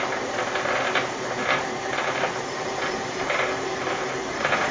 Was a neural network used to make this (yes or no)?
yes